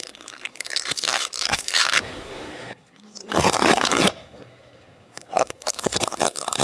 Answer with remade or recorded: remade